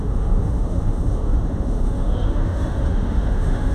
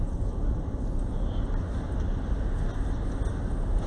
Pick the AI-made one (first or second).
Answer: first